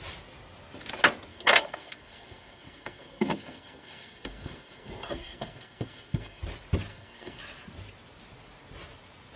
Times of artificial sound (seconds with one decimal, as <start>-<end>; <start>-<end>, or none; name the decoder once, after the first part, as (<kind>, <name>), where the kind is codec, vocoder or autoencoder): 1.3-6.4 (codec, SNAC); 6.9-7.4